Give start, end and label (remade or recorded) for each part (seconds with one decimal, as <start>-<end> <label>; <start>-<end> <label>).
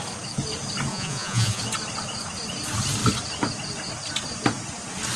0.0-0.9 recorded; 0.9-1.6 remade; 1.6-5.2 recorded